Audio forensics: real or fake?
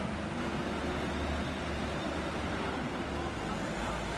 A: real